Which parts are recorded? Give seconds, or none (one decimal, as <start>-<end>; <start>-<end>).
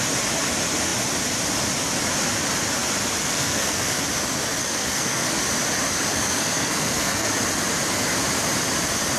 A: 0.0-3.2; 4.0-4.6; 5.4-6.1; 7.3-9.2